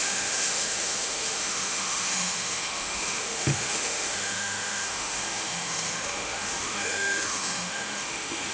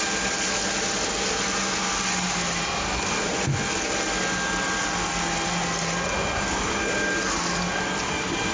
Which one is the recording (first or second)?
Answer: second